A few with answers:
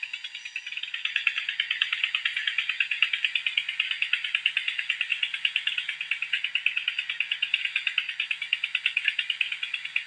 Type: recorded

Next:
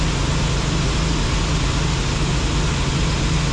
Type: recorded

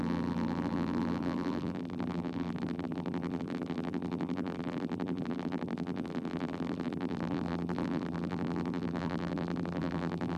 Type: remade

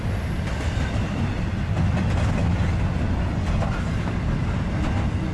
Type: recorded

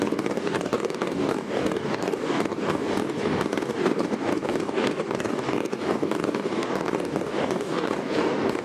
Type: remade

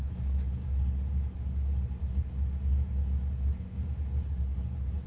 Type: recorded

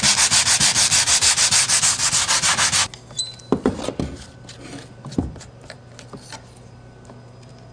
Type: recorded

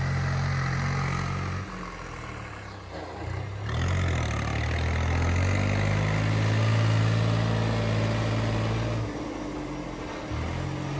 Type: recorded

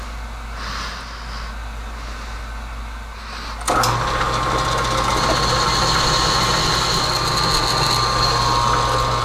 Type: recorded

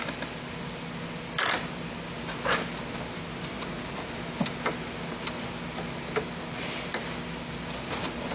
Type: recorded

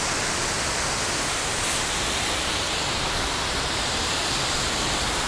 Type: recorded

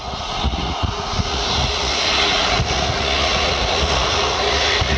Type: remade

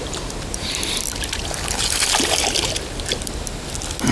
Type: recorded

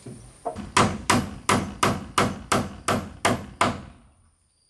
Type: recorded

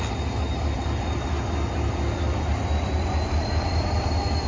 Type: recorded